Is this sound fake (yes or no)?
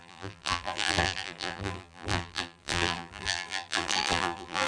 yes